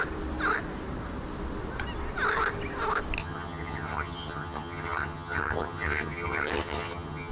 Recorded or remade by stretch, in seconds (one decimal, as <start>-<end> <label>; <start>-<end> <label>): 0.0-3.2 recorded; 3.2-7.3 remade